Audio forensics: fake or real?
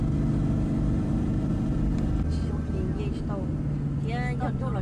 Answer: real